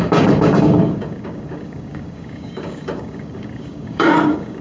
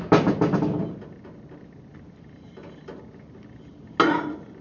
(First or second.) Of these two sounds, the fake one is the first